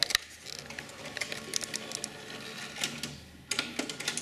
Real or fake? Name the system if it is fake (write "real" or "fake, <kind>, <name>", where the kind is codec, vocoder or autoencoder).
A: real